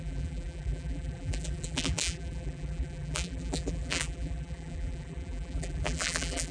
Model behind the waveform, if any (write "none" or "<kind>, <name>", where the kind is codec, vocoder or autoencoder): vocoder, BigVGAN v2